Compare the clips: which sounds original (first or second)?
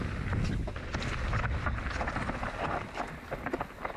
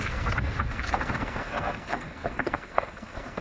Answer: first